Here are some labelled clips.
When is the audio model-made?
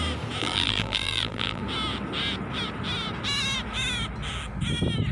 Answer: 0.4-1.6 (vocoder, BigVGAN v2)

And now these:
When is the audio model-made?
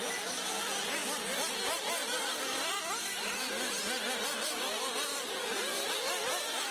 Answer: 4.4-5.4 (vocoder, BigVGAN v2)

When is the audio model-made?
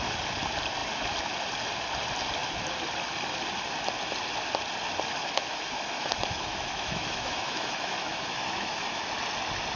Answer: 5.2-9.0 (autoencoder, DAC-VAE)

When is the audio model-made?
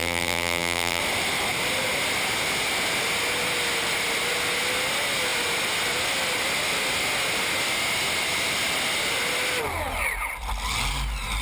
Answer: 0.0-1.0 (vocoder, BigVGAN v2)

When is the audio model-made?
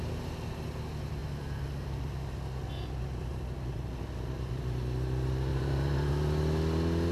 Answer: 3.3-3.9 (vocoder, BigVGAN v2); 5.5-6.1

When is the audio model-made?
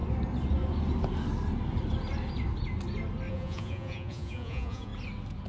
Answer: 3.3-4.9 (vocoder, Vocos)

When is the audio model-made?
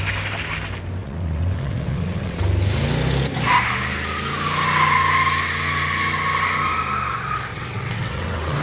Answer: 1.0-2.4 (vocoder, WaveNeXt); 7.5-8.6